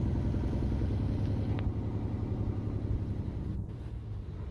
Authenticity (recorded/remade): recorded